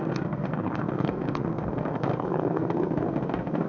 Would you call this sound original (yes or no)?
no